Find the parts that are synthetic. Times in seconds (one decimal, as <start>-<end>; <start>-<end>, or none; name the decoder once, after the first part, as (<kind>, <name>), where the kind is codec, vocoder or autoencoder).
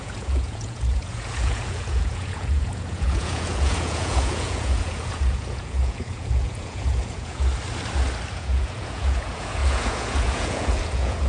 0.0-7.5 (vocoder, Vocos); 8.3-11.3